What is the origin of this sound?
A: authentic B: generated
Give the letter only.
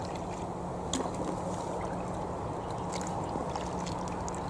A